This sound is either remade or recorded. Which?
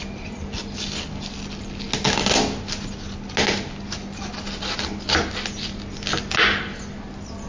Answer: recorded